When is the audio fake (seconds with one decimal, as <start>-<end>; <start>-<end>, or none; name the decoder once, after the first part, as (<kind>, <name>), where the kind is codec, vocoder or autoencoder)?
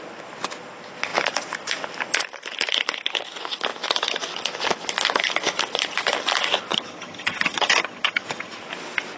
6.7-8.6 (vocoder, HiFi-GAN)